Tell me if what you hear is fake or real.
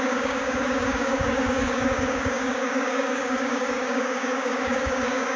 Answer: fake